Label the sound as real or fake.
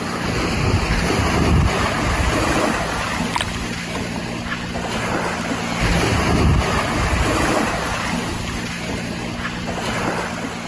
real